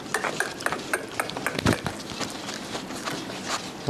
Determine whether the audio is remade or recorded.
recorded